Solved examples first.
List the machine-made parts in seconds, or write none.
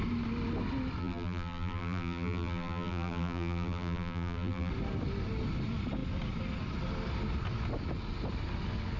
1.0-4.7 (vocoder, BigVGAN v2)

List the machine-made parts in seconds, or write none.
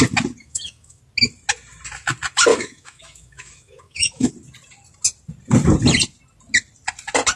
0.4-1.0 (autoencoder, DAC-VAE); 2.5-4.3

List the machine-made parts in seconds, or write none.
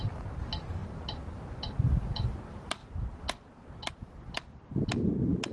none